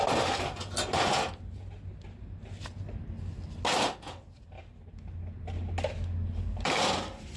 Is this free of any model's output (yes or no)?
yes